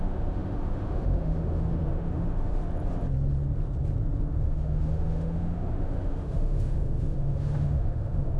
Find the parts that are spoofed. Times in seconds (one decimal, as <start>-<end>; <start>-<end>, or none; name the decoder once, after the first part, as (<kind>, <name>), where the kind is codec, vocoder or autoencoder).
0.0-2.6 (autoencoder, DAC-VAE); 4.2-8.4